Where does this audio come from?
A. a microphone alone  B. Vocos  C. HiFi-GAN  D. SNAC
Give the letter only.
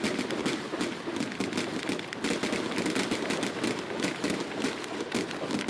A